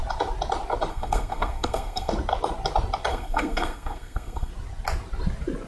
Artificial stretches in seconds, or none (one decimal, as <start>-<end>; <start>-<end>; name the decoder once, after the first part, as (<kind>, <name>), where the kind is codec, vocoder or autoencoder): 0.9-2.1 (codec, SNAC); 3.1-4.5